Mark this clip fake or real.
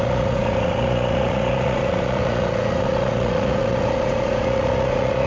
fake